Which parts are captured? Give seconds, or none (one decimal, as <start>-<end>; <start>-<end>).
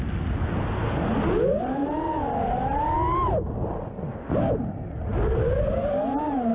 0.0-6.5